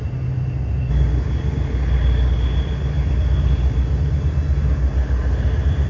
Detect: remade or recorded recorded